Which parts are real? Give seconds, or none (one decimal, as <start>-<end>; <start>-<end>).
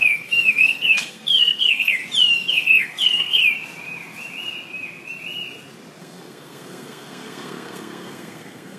2.0-2.5; 3.4-6.0